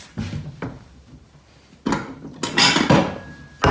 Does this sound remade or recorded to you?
recorded